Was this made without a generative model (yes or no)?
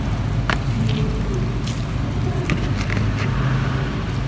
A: yes